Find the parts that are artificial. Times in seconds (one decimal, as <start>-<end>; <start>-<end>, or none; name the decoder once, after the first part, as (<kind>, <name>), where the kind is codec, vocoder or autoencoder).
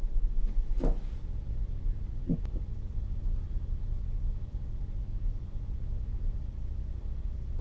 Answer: none